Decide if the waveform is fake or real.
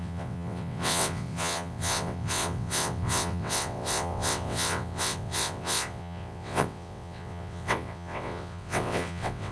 fake